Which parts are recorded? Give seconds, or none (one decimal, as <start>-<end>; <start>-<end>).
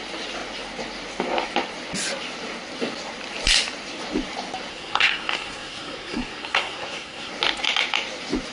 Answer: 0.0-4.7; 7.3-8.5